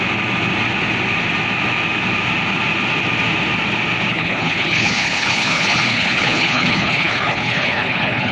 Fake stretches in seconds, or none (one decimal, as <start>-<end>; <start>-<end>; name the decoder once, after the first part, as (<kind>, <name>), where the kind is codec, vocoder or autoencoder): 4.1-8.3 (codec, HILCodec)